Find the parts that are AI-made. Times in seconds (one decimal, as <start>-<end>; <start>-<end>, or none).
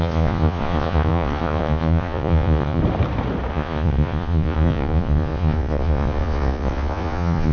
0.0-2.8; 3.5-7.5